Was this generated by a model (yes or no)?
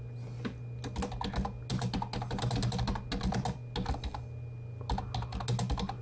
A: no